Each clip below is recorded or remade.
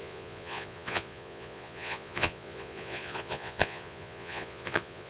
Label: remade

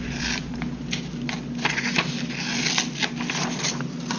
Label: recorded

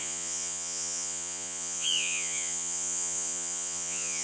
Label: remade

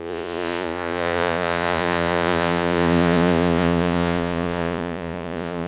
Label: remade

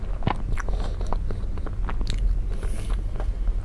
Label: recorded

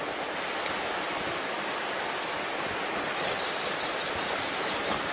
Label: recorded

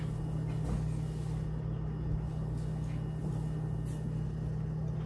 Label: recorded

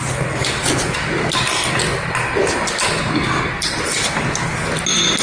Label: recorded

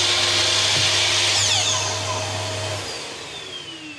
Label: recorded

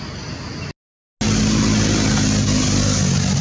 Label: recorded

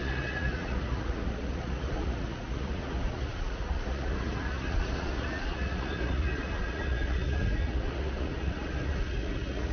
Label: remade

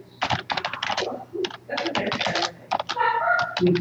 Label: recorded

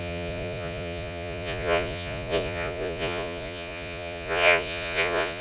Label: remade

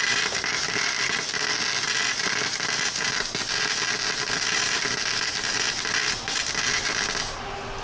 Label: recorded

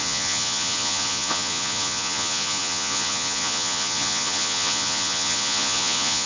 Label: remade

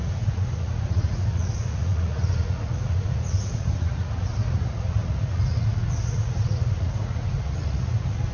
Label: remade